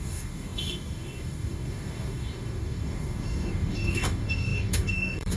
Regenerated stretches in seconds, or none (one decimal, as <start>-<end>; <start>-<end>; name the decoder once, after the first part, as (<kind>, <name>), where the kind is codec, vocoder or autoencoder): 0.0-5.4 (codec, DAC)